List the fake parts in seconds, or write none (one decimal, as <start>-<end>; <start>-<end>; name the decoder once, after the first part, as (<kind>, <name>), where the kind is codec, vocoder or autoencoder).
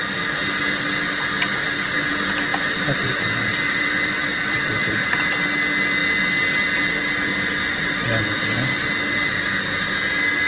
2.5-5.2 (vocoder, BigVGAN v2)